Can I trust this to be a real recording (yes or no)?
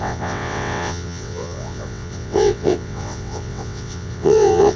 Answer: no